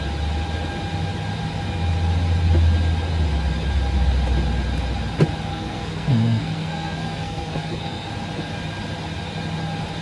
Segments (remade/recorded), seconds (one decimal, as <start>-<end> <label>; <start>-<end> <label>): 0.0-5.5 recorded; 5.5-8.1 remade; 8.1-10.0 recorded